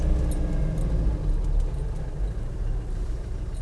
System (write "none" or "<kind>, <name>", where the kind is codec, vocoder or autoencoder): none